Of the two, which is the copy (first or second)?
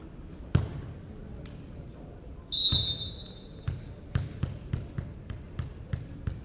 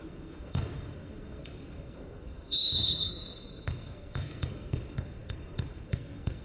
second